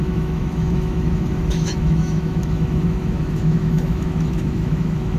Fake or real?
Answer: fake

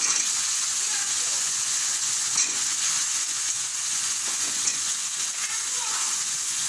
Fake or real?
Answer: fake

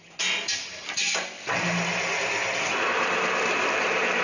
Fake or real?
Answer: real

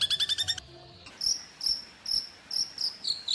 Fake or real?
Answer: real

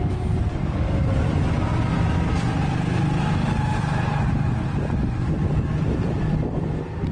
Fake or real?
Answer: real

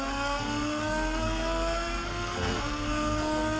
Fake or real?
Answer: fake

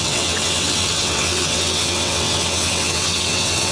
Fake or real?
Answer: fake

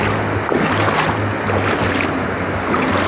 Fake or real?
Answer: real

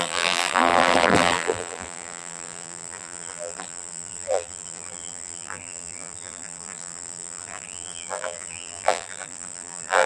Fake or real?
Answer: fake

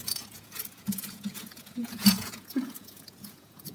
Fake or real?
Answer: fake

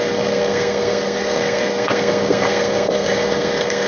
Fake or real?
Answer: fake